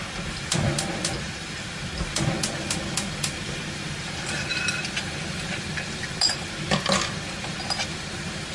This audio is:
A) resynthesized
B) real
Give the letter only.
B